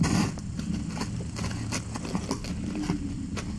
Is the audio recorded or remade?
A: recorded